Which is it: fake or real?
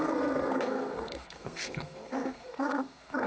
fake